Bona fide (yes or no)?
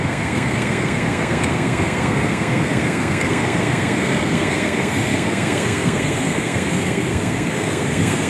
no